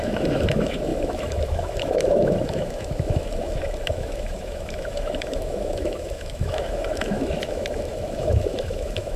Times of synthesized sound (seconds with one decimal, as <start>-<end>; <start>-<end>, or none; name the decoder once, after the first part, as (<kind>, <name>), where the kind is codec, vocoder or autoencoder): 0.0-9.2 (autoencoder, DAC-VAE)